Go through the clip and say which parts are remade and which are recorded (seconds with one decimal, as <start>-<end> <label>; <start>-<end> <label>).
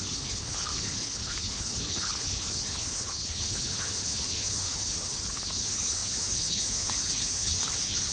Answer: 0.0-8.1 remade